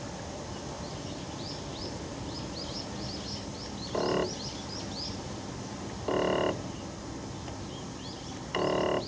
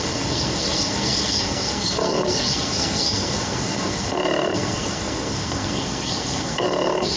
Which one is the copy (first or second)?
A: second